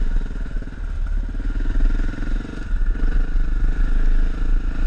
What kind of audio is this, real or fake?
real